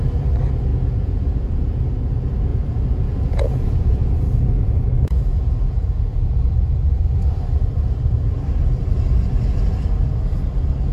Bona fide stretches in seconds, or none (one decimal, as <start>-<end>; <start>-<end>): 0.0-0.7; 1.6-2.5; 7.2-10.9